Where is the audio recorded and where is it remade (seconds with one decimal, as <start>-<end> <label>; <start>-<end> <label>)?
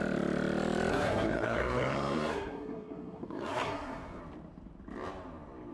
0.0-0.9 recorded; 0.9-4.2 remade; 4.2-5.7 recorded